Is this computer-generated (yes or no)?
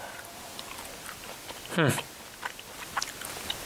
no